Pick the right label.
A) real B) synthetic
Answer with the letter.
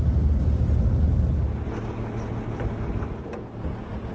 A